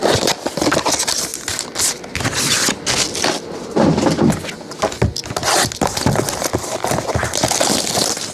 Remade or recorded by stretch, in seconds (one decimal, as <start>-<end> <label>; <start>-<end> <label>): 0.0-8.3 recorded